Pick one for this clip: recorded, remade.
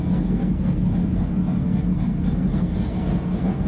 remade